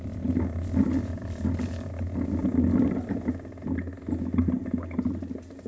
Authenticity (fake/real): real